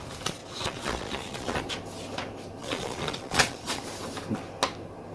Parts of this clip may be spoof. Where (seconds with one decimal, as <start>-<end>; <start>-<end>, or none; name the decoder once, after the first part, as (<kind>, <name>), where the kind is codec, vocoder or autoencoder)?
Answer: 0.4-1.6 (vocoder, Vocos); 2.6-3.8